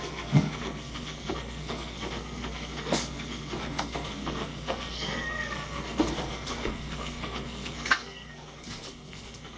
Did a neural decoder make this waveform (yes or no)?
yes